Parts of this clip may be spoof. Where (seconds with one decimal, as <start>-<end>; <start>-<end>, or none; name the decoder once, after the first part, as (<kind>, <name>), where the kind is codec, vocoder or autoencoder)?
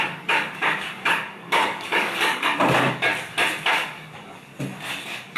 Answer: 0.0-3.1 (codec, DAC); 3.7-4.5; 5.0-5.4